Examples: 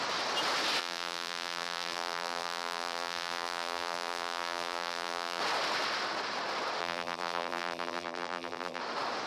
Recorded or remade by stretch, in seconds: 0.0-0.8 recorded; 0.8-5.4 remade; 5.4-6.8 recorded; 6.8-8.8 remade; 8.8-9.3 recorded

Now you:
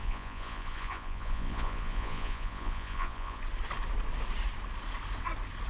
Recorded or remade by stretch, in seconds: 0.0-3.4 remade; 3.4-5.7 recorded

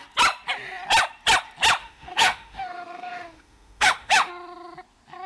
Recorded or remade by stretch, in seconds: 0.0-1.8 recorded; 1.8-4.3 remade; 4.3-5.3 recorded

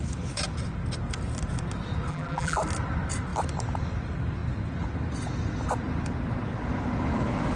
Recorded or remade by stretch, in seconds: 0.0-2.1 recorded; 2.1-2.6 remade; 2.6-7.6 recorded

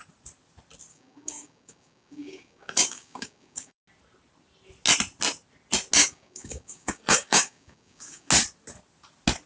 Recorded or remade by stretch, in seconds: 0.0-0.9 recorded; 0.9-3.8 remade; 3.8-6.0 recorded; 6.0-8.3 remade; 8.3-9.5 recorded

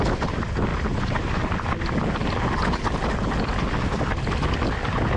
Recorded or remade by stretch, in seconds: 0.0-0.7 recorded; 0.7-1.4 remade; 1.4-5.2 recorded